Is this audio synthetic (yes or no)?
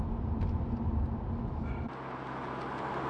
no